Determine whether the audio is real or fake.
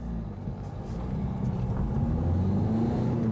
real